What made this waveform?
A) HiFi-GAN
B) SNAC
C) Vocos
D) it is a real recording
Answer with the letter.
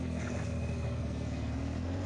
B